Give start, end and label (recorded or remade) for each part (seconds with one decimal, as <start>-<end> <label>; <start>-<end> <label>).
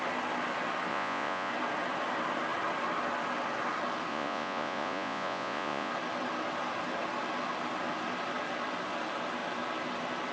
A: 0.0-0.9 recorded; 0.9-1.5 remade; 1.5-4.1 recorded; 4.1-5.9 remade; 5.9-10.3 recorded